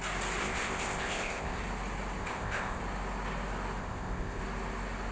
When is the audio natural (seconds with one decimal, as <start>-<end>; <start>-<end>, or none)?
0.0-0.4; 1.6-2.2; 2.8-3.8; 4.4-5.1